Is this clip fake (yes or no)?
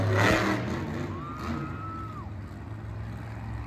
no